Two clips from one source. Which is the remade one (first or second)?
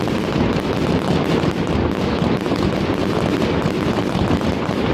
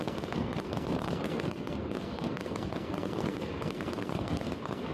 second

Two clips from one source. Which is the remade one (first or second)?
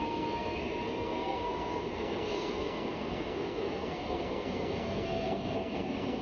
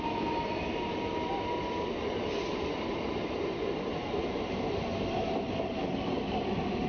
first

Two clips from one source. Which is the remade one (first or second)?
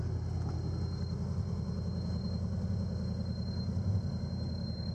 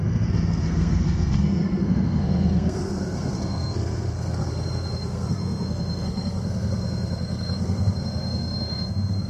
second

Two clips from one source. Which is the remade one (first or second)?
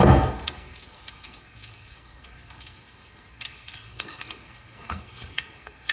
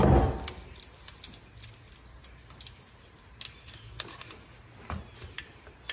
first